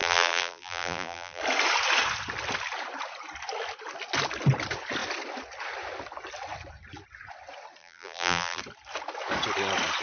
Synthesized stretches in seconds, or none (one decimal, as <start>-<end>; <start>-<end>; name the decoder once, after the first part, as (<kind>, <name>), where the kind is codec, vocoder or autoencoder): 0.0-1.4 (vocoder, BigVGAN v2); 7.8-8.6